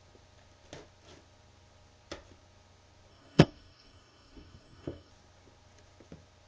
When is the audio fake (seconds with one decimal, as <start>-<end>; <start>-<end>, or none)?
3.1-5.1